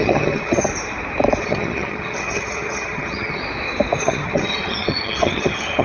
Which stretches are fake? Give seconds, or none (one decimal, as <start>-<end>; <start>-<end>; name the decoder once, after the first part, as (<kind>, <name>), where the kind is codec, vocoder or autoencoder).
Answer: 0.0-0.7 (vocoder, HiFi-GAN); 1.4-3.4; 4.0-5.8